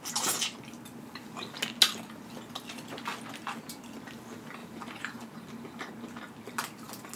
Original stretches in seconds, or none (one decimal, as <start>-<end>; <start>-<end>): 0.0-4.6; 5.9-7.2